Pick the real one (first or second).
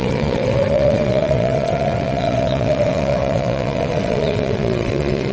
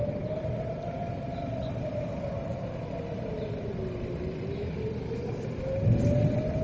second